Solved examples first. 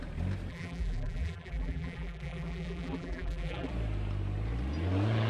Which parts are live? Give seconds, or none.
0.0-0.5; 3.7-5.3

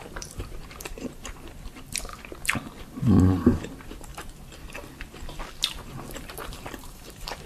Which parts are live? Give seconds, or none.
2.1-3.2; 4.1-6.2

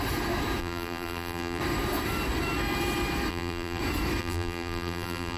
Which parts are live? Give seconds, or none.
0.0-0.6; 1.6-3.3; 3.8-4.2

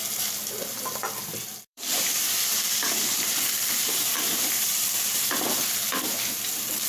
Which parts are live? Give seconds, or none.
0.0-1.2; 5.3-6.9

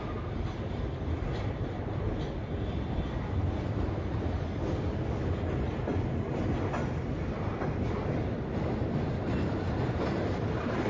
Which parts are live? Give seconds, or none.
0.0-10.9

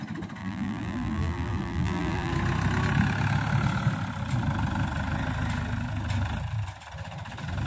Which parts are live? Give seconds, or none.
0.0-0.4; 2.3-7.7

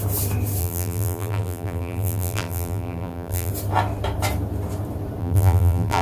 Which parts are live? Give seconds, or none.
0.0-0.6; 3.5-5.2

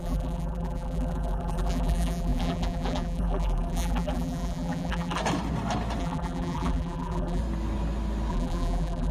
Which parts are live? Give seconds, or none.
5.2-6.0; 7.4-8.3